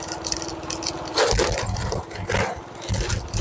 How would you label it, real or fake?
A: real